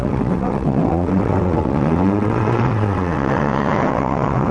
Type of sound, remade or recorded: remade